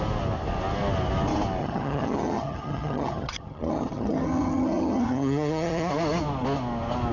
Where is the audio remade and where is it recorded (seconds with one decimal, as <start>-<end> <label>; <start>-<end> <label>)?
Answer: 0.0-1.6 recorded; 1.6-5.9 remade; 5.9-7.1 recorded